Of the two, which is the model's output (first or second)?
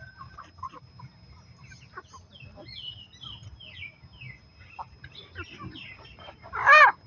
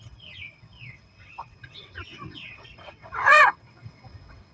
second